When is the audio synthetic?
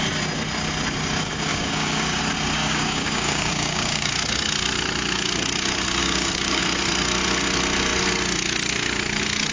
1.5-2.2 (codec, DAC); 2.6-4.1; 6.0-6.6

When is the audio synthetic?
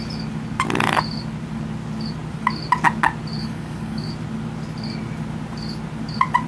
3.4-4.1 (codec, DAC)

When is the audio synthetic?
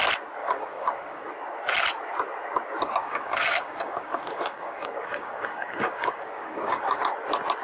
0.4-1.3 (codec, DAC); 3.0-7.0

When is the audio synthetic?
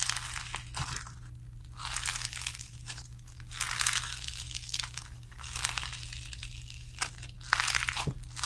2.1-5.9 (codec, DAC); 6.4-7.0